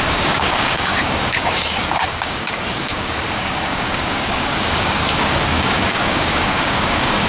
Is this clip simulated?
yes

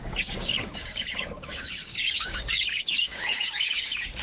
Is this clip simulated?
yes